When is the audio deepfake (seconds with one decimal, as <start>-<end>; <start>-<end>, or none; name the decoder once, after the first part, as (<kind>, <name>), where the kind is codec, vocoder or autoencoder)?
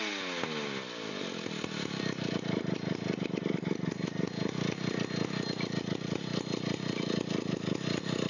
none